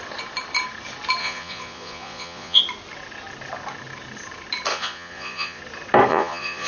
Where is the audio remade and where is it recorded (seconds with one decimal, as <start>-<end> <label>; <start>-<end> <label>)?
0.0-1.2 recorded; 1.2-2.6 remade; 2.6-4.7 recorded; 4.7-5.6 remade; 5.6-6.1 recorded; 6.1-6.7 remade